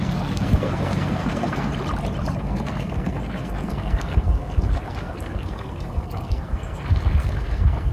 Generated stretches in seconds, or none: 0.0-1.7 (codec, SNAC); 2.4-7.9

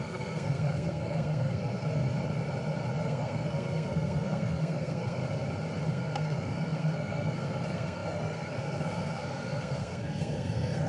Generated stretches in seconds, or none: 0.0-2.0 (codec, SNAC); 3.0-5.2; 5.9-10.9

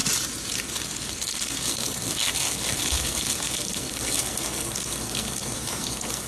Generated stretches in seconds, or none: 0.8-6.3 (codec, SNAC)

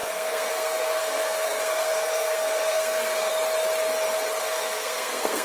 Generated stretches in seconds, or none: 0.0-3.3 (codec, SNAC); 4.4-5.4

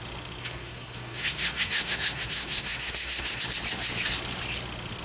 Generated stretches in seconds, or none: 0.4-3.4 (codec, SNAC)

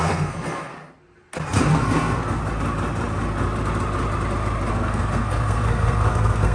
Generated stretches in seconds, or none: 0.0-0.7 (codec, SNAC); 1.7-2.4; 4.7-6.5

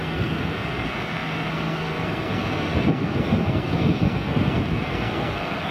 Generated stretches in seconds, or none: 0.0-5.7 (codec, SNAC)